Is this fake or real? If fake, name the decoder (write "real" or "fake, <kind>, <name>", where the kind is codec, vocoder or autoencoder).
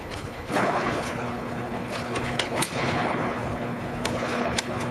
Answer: fake, codec, HILCodec